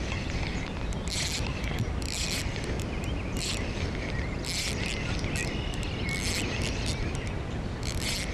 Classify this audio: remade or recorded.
recorded